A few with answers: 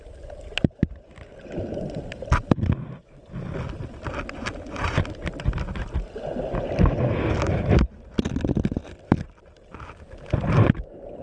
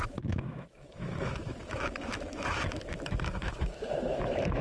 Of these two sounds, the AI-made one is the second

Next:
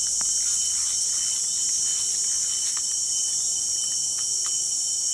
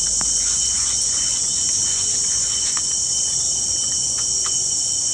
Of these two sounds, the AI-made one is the second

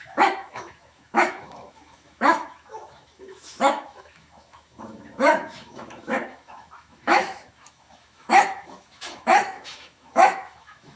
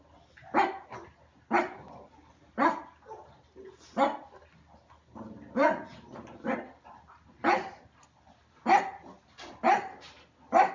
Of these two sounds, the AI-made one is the first